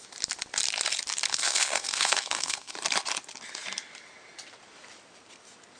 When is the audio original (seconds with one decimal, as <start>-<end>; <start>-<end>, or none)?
0.0-1.3; 2.7-5.8